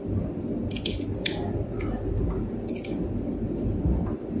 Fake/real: real